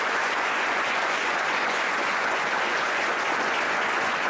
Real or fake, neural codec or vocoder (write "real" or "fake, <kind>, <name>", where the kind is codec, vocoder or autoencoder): fake, vocoder, Vocos